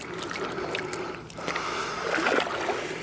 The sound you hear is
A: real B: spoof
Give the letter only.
A